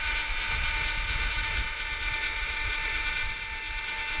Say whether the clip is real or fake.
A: real